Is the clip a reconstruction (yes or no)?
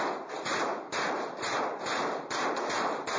no